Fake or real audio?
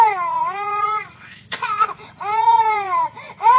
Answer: fake